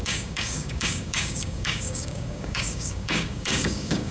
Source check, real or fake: fake